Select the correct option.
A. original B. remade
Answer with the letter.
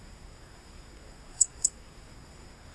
B